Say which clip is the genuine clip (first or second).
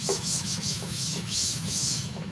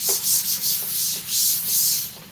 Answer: second